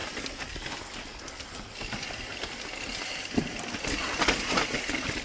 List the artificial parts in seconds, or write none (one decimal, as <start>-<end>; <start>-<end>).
none